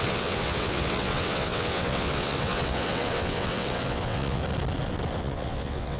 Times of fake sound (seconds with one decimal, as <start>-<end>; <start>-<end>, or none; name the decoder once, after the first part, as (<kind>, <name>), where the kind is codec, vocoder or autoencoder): 0.0-4.4 (vocoder, WaveNeXt); 5.2-6.0